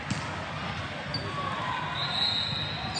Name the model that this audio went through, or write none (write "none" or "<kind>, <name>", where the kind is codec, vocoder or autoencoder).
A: none